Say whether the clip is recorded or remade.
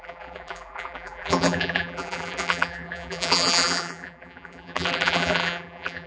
remade